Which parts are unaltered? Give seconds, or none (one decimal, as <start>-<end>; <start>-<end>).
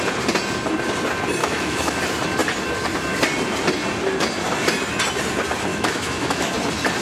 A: 0.0-1.4; 2.0-5.7; 6.5-7.0